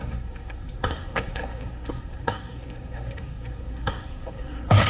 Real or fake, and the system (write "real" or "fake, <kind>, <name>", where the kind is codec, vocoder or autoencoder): fake, codec, SNAC